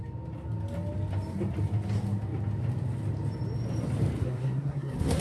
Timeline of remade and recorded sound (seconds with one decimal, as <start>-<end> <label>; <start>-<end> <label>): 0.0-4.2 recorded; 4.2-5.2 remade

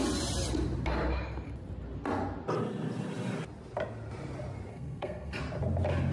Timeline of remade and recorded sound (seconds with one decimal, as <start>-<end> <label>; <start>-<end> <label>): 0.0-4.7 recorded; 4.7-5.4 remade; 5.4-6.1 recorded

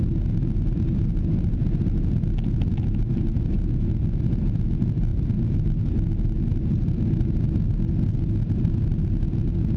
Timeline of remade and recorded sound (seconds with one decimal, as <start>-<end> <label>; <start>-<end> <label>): 0.0-9.8 recorded